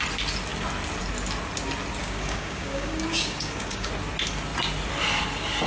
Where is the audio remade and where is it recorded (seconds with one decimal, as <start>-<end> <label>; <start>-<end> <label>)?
0.0-2.0 recorded; 2.0-3.9 remade; 3.9-5.7 recorded